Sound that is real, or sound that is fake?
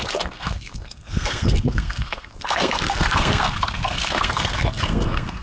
fake